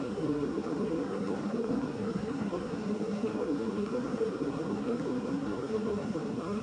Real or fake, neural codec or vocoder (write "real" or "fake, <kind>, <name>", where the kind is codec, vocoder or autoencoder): fake, codec, SNAC